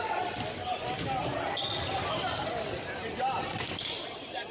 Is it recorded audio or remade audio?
recorded